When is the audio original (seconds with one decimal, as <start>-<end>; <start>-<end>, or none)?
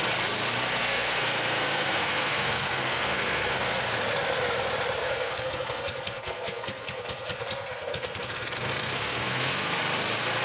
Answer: 0.0-0.8; 3.8-5.0; 9.8-10.4